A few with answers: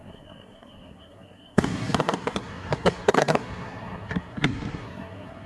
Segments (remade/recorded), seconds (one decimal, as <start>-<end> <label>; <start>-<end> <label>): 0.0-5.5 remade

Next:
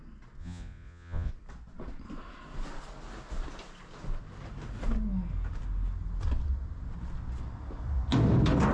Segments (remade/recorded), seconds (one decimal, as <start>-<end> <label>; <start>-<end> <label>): 0.0-0.4 recorded; 0.4-1.3 remade; 1.3-8.7 recorded

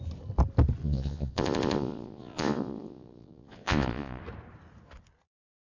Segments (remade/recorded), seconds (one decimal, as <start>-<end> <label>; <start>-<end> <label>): 0.0-0.8 recorded; 0.8-4.2 remade; 4.2-5.7 recorded

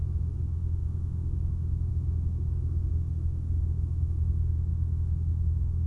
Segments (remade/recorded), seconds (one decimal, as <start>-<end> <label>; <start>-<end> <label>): 0.0-5.9 remade

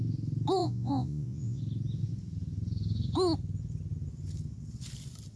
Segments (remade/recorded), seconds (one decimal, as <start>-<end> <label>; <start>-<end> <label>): 0.0-0.6 recorded; 0.6-1.6 remade; 1.6-5.4 recorded